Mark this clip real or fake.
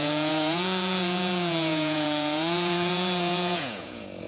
fake